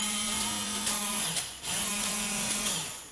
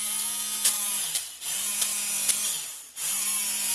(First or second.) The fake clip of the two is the first